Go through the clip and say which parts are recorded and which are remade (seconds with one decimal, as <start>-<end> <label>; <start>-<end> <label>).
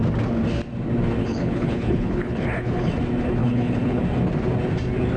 0.0-1.2 recorded; 1.2-2.9 remade; 2.9-3.4 recorded; 3.4-4.0 remade; 4.0-5.2 recorded